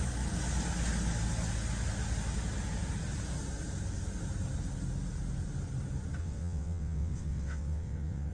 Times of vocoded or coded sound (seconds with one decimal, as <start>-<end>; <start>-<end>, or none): 6.2-8.3

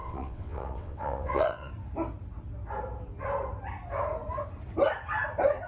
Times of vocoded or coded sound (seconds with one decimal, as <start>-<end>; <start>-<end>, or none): 0.0-1.7

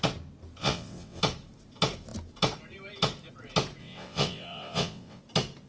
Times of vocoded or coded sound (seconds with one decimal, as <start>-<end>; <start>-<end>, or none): 0.6-1.2; 3.8-5.2